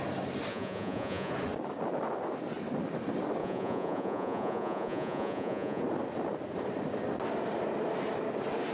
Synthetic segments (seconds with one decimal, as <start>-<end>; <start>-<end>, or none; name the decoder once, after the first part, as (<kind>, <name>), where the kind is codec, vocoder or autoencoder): 0.5-1.3 (vocoder, Vocos); 3.4-5.8